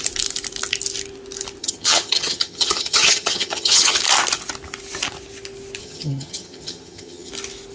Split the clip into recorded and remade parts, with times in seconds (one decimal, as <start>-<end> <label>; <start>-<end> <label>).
0.0-1.6 recorded; 1.6-4.0 remade; 4.0-5.8 recorded; 5.8-7.3 remade; 7.3-7.7 recorded